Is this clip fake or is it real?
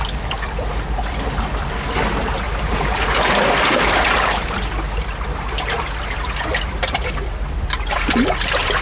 fake